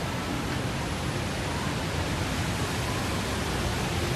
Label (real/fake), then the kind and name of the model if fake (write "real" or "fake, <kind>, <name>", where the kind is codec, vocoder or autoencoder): real